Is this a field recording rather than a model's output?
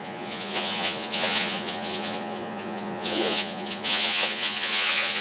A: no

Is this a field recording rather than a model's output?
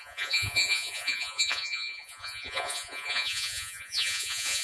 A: no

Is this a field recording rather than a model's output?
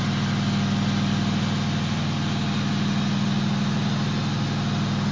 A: yes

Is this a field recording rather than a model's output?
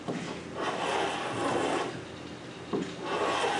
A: yes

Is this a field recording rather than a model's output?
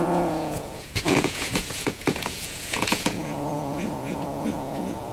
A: no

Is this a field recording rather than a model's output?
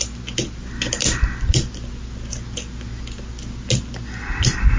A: yes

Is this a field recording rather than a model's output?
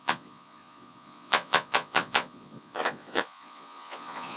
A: no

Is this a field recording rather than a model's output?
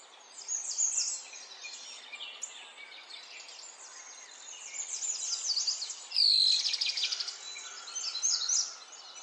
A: yes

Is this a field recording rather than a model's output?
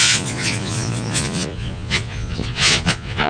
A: no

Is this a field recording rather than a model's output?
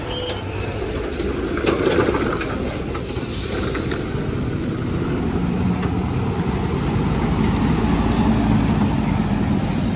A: yes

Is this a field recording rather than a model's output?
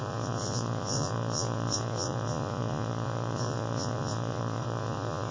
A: no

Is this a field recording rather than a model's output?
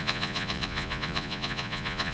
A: no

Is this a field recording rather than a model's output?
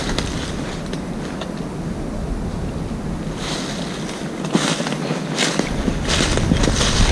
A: yes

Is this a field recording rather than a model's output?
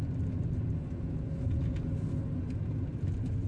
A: yes